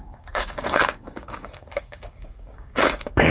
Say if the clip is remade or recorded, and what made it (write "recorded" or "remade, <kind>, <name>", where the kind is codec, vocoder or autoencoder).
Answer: remade, codec, DAC